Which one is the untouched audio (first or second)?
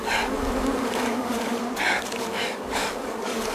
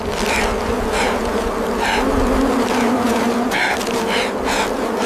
second